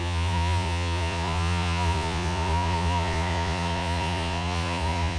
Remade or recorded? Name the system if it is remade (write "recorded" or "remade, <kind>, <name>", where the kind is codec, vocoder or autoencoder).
remade, vocoder, Vocos